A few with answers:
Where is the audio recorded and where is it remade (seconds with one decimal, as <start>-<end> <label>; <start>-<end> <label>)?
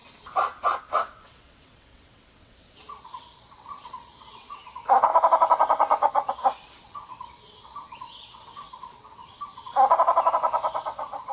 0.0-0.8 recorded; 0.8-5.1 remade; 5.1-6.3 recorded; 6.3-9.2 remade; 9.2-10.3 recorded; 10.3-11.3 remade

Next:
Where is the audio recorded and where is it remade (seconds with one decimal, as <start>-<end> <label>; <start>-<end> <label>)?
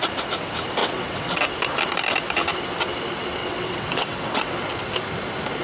0.0-0.8 recorded; 0.8-1.4 remade; 1.4-3.4 recorded; 3.4-4.5 remade; 4.5-5.6 recorded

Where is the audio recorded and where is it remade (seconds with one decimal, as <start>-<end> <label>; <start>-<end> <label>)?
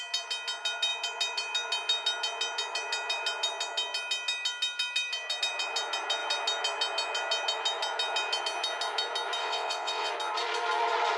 0.0-9.4 recorded; 9.4-10.1 remade; 10.1-11.2 recorded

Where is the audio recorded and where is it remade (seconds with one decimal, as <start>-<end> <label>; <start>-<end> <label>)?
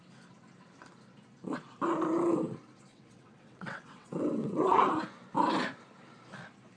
0.0-2.9 recorded; 2.9-4.9 remade; 4.9-6.8 recorded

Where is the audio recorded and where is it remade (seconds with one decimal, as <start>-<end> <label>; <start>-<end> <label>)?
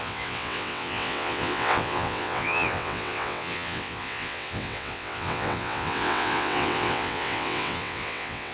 0.0-8.5 remade